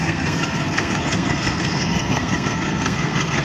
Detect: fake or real fake